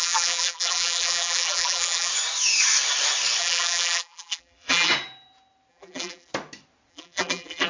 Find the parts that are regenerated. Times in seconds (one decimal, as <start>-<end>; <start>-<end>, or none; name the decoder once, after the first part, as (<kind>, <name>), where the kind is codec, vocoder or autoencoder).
0.0-2.1 (vocoder, BigVGAN v2); 3.4-4.9; 5.7-6.3; 6.9-7.7